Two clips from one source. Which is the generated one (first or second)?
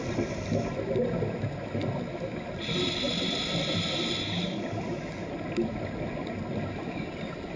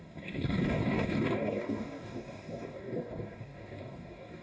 second